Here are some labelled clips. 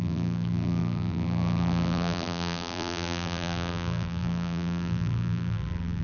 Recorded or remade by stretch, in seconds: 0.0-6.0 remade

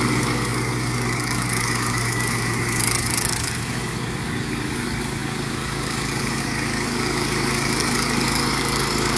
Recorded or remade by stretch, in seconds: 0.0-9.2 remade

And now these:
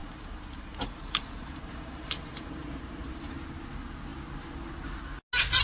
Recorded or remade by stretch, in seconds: 0.0-3.4 remade; 3.4-5.6 recorded

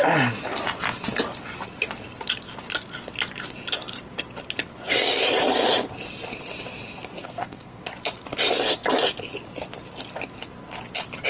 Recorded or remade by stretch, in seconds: 0.0-7.2 recorded; 7.2-7.8 remade; 7.8-11.3 recorded

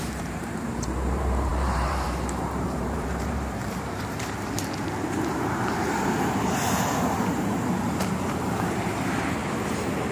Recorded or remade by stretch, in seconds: 0.0-10.1 remade

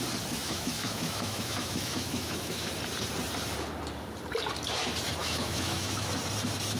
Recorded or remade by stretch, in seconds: 0.0-0.4 recorded; 0.4-2.7 remade; 2.7-5.2 recorded; 5.2-6.1 remade; 6.1-6.8 recorded